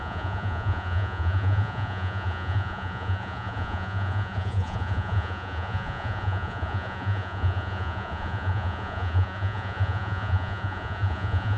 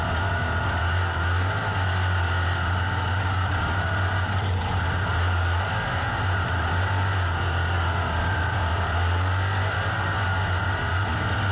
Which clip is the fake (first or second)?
first